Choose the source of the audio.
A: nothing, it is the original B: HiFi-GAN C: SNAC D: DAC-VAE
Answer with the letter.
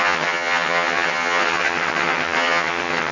B